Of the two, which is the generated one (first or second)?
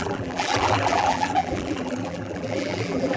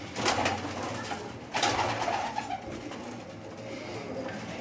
first